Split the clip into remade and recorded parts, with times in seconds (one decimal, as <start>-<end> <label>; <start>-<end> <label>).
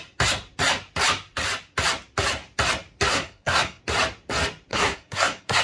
0.0-3.1 recorded; 3.1-3.8 remade; 3.8-4.7 recorded; 4.7-5.6 remade